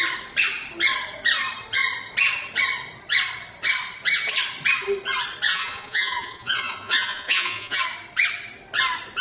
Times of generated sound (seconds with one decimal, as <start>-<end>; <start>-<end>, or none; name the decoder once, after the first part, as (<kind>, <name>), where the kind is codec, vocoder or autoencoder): 5.5-7.8 (vocoder, Vocos)

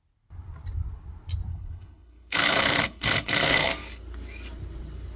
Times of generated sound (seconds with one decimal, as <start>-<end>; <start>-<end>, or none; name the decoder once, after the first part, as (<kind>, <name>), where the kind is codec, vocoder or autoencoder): 1.5-3.7 (codec, HILCodec)

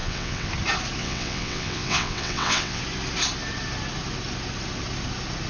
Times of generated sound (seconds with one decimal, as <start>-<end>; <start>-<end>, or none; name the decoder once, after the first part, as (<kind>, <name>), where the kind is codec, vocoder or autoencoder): 0.0-0.5 (vocoder, WaveNeXt); 1.0-2.8

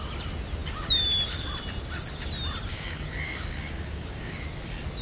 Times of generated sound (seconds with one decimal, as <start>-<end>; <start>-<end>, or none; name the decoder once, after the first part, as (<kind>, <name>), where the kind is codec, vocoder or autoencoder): 2.7-4.5 (codec, DAC)

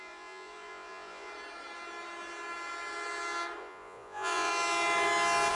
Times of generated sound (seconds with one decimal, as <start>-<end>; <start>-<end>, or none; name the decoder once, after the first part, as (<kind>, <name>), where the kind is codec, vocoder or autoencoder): 0.0-1.3 (vocoder, Vocos); 3.6-4.5

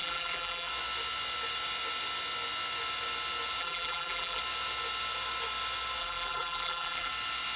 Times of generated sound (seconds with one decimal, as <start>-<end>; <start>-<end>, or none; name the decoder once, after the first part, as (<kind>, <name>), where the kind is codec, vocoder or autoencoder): 0.0-0.7 (vocoder, BigVGAN v2); 3.6-4.4; 6.0-7.1

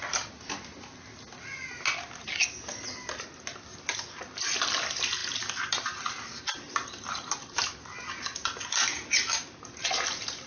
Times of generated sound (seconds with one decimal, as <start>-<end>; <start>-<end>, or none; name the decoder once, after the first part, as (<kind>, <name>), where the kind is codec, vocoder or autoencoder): none